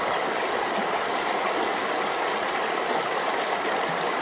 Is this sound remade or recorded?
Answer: recorded